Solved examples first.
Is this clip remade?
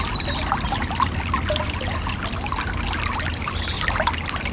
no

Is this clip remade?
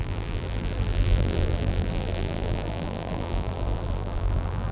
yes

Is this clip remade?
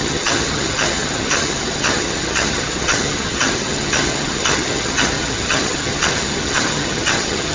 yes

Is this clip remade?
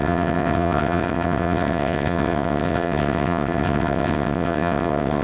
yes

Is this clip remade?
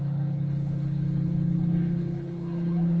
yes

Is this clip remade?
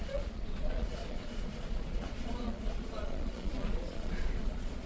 yes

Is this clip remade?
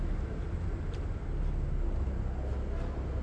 no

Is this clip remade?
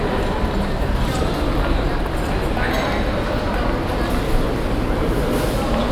no